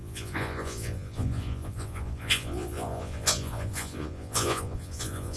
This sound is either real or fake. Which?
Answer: fake